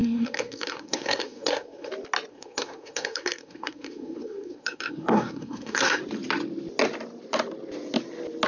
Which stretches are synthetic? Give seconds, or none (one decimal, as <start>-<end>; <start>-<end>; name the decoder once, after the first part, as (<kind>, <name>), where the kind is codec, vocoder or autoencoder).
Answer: 0.0-1.9 (codec, SNAC); 2.3-6.0